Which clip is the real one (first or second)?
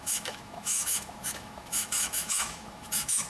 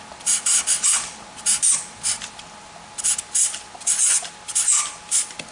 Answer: second